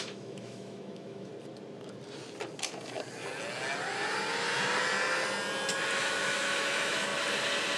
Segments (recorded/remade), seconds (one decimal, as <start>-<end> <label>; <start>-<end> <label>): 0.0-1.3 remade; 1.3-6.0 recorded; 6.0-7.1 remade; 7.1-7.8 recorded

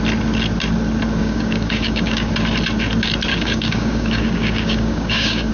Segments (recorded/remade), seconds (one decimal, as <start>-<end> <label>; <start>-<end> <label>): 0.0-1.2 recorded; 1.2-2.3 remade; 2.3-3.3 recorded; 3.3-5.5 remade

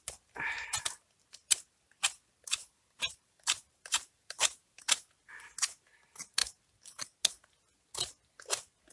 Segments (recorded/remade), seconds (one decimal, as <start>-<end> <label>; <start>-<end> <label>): 0.0-2.6 recorded; 2.6-4.8 remade; 4.8-8.9 recorded

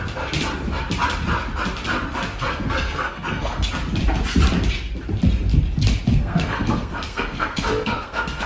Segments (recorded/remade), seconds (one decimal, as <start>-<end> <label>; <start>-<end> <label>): 0.0-2.5 recorded; 2.5-3.7 remade; 3.7-6.1 recorded; 6.1-8.5 remade